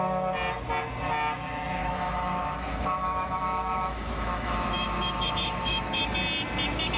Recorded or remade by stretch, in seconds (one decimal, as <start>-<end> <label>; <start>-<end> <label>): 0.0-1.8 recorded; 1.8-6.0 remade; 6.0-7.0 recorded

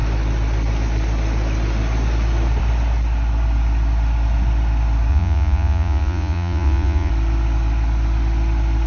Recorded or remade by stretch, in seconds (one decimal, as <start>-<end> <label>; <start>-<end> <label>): 0.0-5.1 recorded; 5.1-7.1 remade; 7.1-8.9 recorded

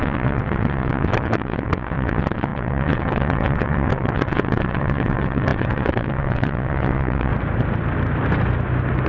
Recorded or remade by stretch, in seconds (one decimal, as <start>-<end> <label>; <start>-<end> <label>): 0.0-7.3 remade; 7.3-9.1 recorded